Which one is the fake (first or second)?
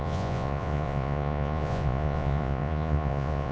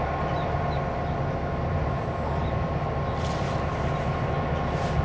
first